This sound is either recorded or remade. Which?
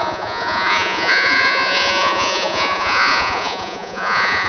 remade